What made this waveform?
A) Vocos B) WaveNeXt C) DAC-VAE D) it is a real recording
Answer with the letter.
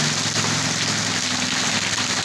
D